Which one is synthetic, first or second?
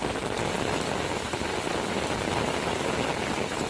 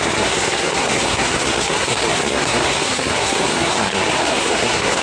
second